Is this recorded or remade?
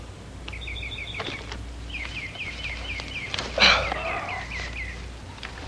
recorded